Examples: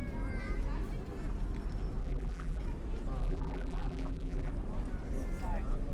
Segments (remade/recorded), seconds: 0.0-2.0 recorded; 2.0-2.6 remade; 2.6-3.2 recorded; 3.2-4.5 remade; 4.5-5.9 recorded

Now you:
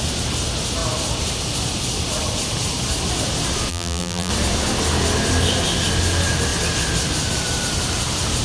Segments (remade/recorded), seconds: 0.0-3.7 recorded; 3.7-4.3 remade; 4.3-8.4 recorded

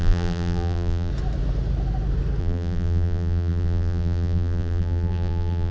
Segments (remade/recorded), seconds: 0.0-1.1 remade; 1.1-2.4 recorded; 2.4-5.7 remade

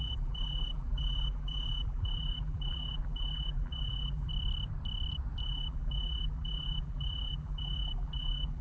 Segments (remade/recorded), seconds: 0.0-4.3 remade; 4.3-5.4 recorded; 5.4-8.6 remade

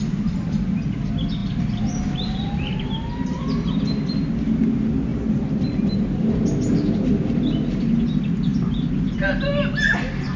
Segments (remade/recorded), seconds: 0.0-1.4 recorded; 1.4-2.9 remade; 2.9-8.5 recorded; 8.5-9.5 remade; 9.5-10.4 recorded

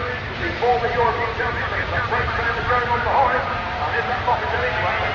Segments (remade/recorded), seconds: 0.0-0.7 recorded; 0.7-2.6 remade; 2.6-3.3 recorded; 3.3-4.4 remade; 4.4-5.1 recorded

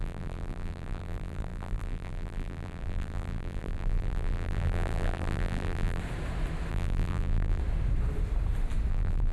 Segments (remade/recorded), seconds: 0.0-6.0 remade; 6.0-6.7 recorded; 6.7-7.6 remade; 7.6-8.9 recorded; 8.9-9.3 remade